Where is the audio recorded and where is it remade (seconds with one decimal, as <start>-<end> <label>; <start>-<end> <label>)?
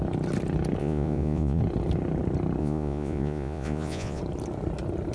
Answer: 0.0-0.8 recorded; 0.8-1.6 remade; 1.6-2.6 recorded; 2.6-4.2 remade; 4.2-5.1 recorded